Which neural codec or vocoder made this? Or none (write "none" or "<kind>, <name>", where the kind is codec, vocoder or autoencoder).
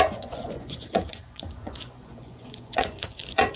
vocoder, Vocos